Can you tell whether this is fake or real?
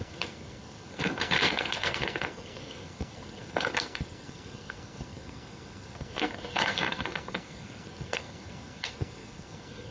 fake